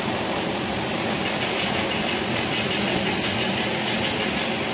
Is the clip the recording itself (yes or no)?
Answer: yes